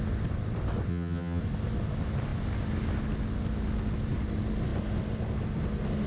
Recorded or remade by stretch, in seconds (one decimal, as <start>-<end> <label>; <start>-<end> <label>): 0.0-0.9 recorded; 0.9-1.4 remade; 1.4-6.1 recorded